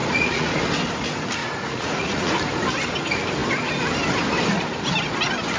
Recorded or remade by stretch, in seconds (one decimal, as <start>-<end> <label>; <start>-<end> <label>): 0.0-0.6 remade; 0.6-1.4 recorded; 1.4-2.3 remade; 2.3-5.6 recorded